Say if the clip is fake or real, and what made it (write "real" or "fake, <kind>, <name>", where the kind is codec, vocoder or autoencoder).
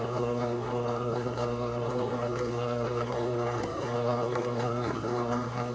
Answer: fake, codec, SNAC